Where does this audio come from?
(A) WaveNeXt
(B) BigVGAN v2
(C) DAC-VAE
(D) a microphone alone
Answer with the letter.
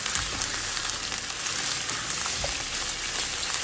D